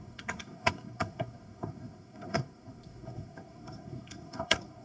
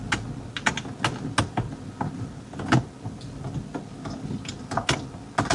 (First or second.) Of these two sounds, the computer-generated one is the first